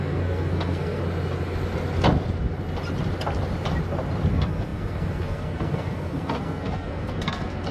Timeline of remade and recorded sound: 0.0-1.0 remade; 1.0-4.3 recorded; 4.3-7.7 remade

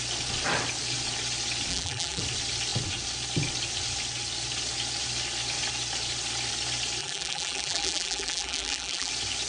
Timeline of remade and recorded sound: 0.0-1.7 recorded; 1.7-2.2 remade; 2.2-7.0 recorded; 7.0-9.1 remade; 9.1-9.5 recorded